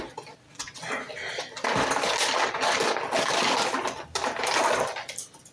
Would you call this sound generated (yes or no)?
no